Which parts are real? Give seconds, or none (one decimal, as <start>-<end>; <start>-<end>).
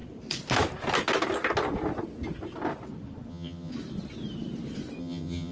0.0-3.3; 3.7-5.0